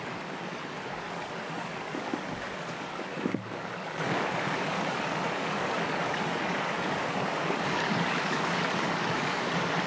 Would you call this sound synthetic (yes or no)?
yes